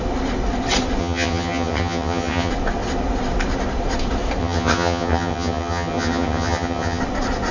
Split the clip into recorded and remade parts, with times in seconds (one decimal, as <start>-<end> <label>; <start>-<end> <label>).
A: 0.0-1.0 recorded; 1.0-2.5 remade; 2.5-4.4 recorded; 4.4-7.0 remade; 7.0-7.5 recorded